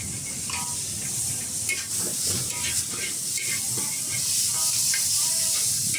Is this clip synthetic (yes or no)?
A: no